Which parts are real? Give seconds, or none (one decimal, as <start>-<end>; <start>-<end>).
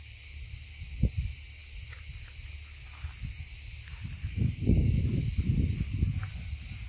0.0-4.2; 5.0-6.9